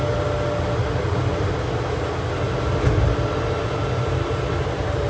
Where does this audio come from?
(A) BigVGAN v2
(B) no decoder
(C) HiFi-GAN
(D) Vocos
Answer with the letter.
B